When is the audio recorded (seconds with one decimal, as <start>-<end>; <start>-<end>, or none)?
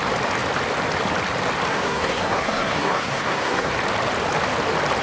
0.0-1.7; 3.7-5.0